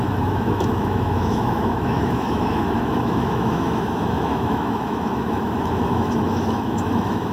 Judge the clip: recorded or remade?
remade